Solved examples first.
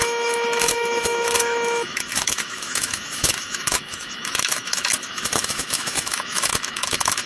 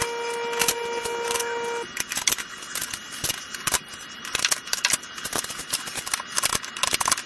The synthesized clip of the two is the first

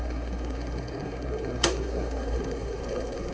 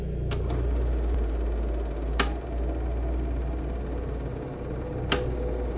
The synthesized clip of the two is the first